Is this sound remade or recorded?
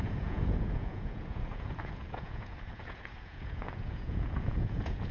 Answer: remade